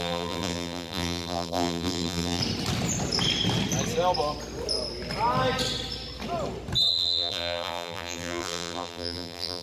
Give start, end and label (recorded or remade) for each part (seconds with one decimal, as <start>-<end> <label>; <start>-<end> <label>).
0.0-2.4 remade; 2.4-6.9 recorded; 6.9-9.6 remade